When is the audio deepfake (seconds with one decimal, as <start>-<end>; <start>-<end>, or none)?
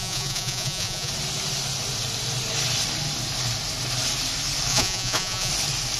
0.0-1.1; 4.7-5.5